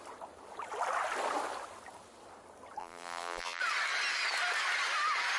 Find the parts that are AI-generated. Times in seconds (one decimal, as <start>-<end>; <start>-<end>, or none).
2.8-3.6